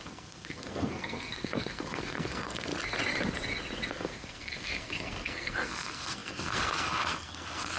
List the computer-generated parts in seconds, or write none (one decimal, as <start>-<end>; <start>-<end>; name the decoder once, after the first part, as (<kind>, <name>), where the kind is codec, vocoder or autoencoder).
0.0-2.7 (codec, SNAC); 3.9-7.8